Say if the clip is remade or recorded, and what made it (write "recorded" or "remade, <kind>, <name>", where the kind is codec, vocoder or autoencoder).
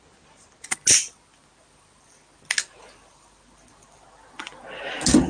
recorded